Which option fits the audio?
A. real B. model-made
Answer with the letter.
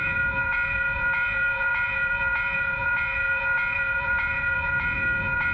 B